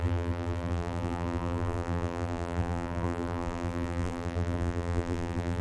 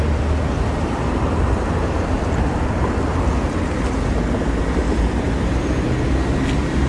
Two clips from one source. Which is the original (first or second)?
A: second